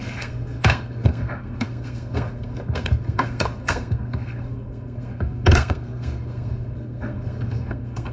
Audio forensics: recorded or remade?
remade